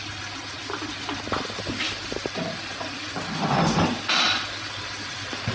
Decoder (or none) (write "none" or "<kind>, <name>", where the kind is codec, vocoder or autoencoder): none